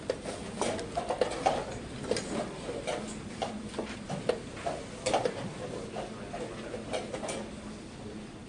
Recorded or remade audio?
recorded